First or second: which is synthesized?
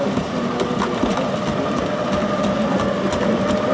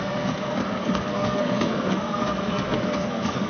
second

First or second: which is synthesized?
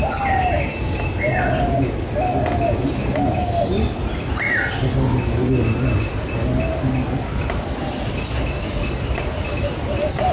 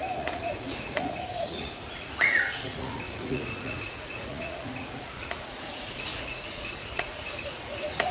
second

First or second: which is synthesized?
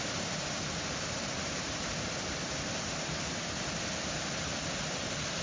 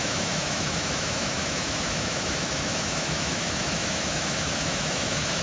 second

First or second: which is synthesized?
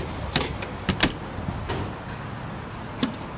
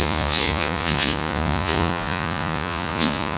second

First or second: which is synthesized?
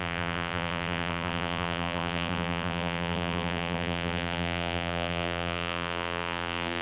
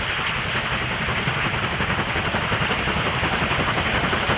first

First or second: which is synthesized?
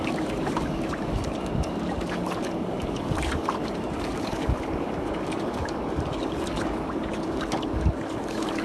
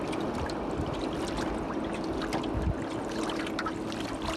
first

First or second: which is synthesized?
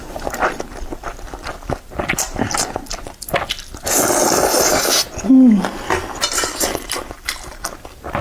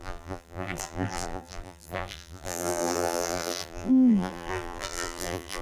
second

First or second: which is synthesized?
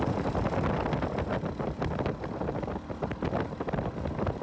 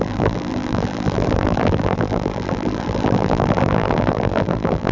second